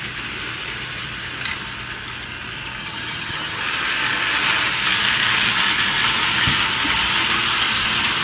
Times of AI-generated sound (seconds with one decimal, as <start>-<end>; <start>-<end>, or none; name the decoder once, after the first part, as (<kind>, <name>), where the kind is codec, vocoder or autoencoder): 2.8-3.6 (vocoder, HiFi-GAN)